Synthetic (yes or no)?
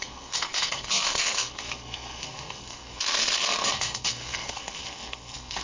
yes